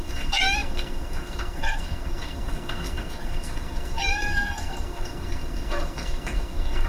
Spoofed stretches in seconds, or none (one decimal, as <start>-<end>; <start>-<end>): 0.0-6.9